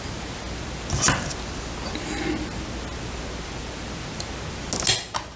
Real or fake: real